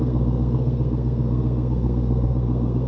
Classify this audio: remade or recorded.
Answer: remade